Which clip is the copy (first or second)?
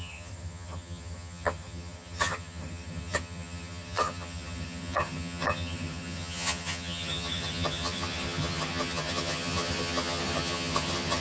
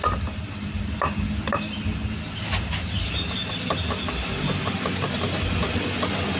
first